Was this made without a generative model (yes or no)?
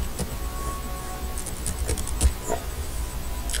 yes